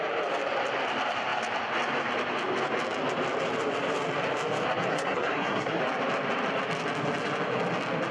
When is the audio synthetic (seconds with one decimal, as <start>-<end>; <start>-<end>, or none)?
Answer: 4.9-5.8